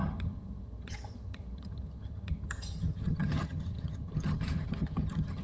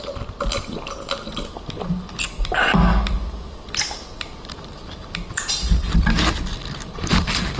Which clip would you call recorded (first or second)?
second